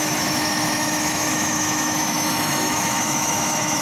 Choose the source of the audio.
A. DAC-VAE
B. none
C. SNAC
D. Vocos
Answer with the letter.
A